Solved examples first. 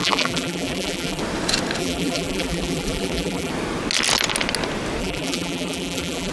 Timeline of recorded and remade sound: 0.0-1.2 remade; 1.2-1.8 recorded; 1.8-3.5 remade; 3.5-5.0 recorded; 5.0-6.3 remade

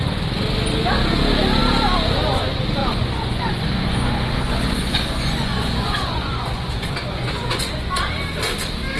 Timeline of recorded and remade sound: 0.0-2.8 recorded; 2.8-8.1 remade; 8.1-9.0 recorded

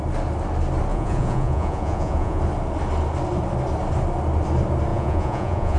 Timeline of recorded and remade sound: 0.0-0.9 recorded; 0.9-2.4 remade; 2.4-4.9 recorded; 4.9-5.8 remade

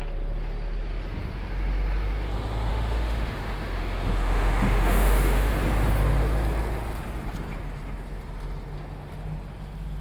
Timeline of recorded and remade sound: 0.0-2.7 recorded; 2.7-5.5 remade; 5.5-10.0 recorded

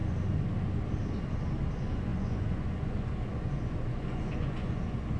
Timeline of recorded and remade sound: 0.0-1.7 recorded; 1.7-5.2 remade

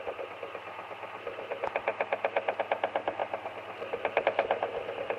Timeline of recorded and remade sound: 0.0-5.2 recorded

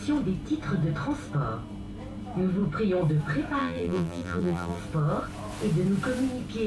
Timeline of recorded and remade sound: 0.0-3.6 recorded; 3.6-4.8 remade; 4.8-6.7 recorded